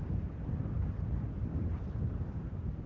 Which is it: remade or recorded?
recorded